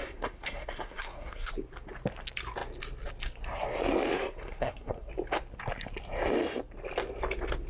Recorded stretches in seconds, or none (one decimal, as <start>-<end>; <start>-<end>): 1.5-4.1; 5.1-7.7